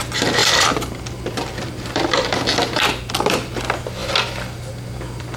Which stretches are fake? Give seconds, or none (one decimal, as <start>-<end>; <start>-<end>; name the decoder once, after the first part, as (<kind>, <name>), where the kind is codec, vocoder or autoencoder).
0.4-3.6 (vocoder, BigVGAN v2); 4.0-4.7